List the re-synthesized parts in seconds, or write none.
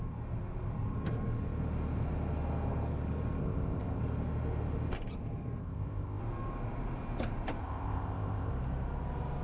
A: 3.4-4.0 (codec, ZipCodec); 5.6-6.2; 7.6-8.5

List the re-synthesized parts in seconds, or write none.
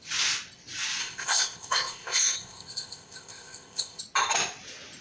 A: 1.0-4.0 (codec, ZipCodec)